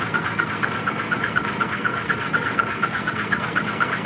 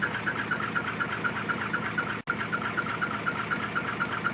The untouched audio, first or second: second